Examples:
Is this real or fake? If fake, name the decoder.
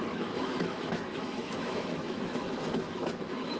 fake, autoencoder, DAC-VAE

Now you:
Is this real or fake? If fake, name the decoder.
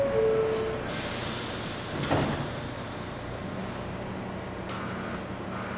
real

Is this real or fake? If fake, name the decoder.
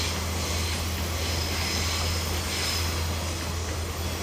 real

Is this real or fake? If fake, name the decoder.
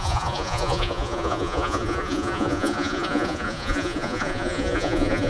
fake, vocoder, Vocos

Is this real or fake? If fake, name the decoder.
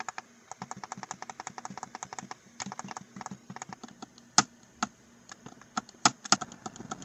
real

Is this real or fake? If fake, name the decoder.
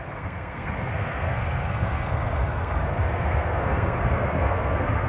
fake, codec, SNAC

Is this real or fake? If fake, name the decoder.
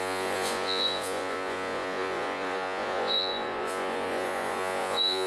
fake, vocoder, Vocos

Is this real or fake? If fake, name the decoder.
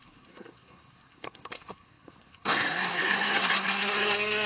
fake, codec, SNAC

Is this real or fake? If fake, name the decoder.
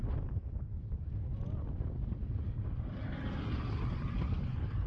real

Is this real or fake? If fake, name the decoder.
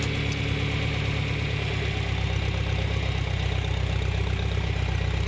real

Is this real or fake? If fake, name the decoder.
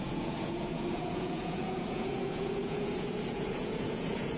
fake, vocoder, Vocos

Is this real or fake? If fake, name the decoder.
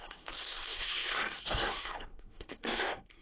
fake, codec, SNAC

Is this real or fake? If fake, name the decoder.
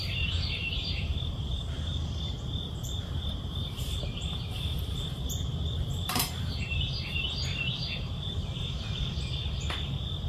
fake, vocoder, BigVGAN v2